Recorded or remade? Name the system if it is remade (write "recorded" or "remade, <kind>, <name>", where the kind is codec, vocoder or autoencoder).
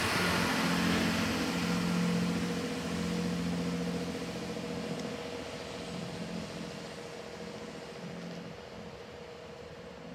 recorded